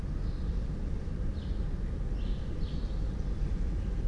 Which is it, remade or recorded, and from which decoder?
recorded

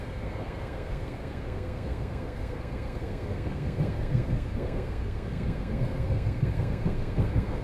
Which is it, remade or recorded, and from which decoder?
remade, codec, SNAC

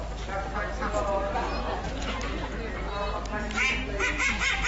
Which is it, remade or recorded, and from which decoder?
recorded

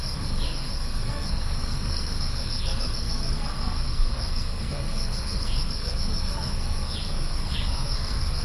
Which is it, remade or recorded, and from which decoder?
remade, codec, SNAC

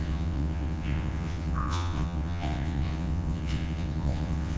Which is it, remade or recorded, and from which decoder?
remade, vocoder, WaveNeXt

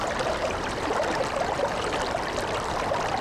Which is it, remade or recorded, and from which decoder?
remade, vocoder, BigVGAN v2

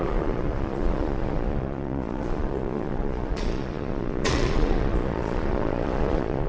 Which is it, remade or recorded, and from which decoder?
remade, vocoder, Vocos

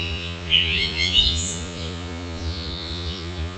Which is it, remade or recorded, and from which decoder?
remade, vocoder, Vocos